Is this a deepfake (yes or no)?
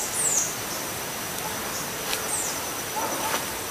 no